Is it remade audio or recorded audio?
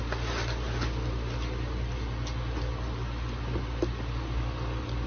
recorded